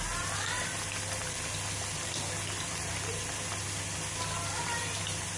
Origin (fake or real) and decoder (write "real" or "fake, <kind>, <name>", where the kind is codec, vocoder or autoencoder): real